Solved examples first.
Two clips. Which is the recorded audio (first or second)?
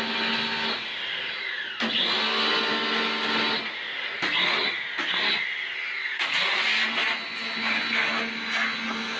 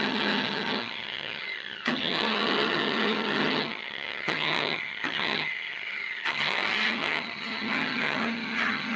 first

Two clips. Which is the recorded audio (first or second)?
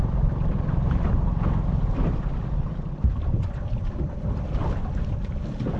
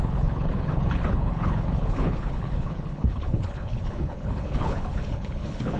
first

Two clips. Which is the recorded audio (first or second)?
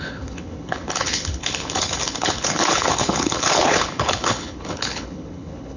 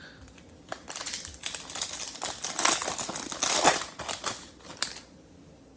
second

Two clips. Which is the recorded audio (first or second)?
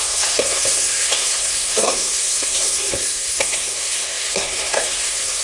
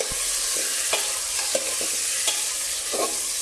second